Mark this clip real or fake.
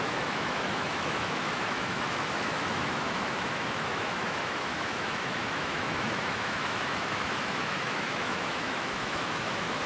fake